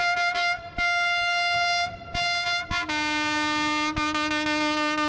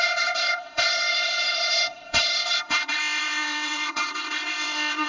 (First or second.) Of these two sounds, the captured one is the first